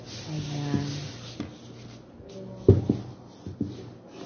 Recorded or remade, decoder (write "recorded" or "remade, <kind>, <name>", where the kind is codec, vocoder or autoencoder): recorded